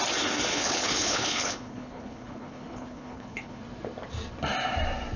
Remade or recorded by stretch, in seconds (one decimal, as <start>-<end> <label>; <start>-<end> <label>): 0.0-0.5 recorded; 0.5-3.6 remade; 3.6-5.2 recorded

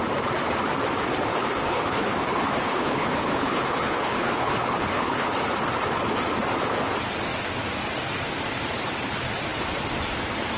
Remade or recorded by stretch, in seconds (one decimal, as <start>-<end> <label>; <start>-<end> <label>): 0.0-1.3 recorded; 1.3-5.3 remade; 5.3-10.6 recorded